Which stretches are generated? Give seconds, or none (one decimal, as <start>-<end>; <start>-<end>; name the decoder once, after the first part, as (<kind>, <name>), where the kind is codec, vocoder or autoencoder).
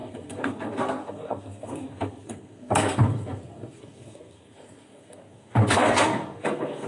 0.0-6.9 (codec, SNAC)